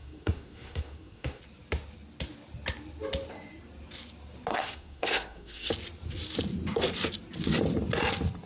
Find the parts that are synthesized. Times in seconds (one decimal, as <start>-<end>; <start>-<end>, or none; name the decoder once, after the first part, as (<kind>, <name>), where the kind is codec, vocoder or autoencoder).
0.0-1.4 (codec, SNAC); 4.5-5.7